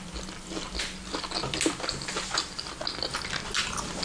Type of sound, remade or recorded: recorded